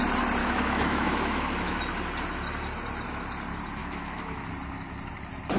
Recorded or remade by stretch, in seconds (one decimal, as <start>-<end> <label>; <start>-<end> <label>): 0.0-0.4 recorded; 0.4-1.8 remade; 1.8-3.8 recorded; 3.8-4.5 remade; 4.5-5.6 recorded